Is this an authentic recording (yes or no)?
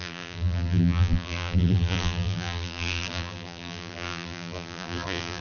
no